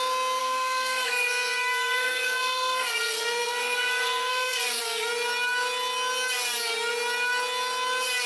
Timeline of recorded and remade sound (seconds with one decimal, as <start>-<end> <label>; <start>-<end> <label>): 0.0-0.4 recorded; 0.4-5.1 remade; 5.1-8.3 recorded